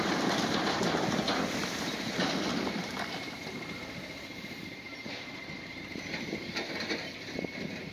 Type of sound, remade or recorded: remade